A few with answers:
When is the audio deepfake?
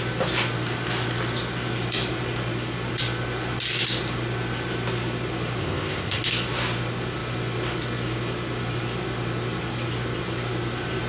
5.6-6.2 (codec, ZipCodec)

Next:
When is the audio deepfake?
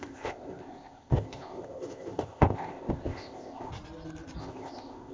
0.0-3.7 (codec, ZipCodec); 4.4-5.1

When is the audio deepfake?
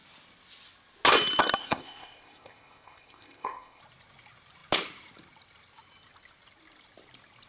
1.6-3.8 (codec, ZipCodec)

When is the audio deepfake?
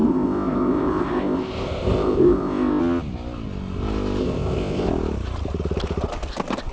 0.0-2.8 (codec, ZipCodec); 4.2-4.9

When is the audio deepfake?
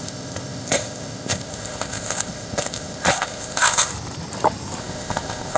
0.0-3.9 (codec, ZipCodec); 4.8-5.6